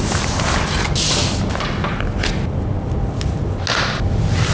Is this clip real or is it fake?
real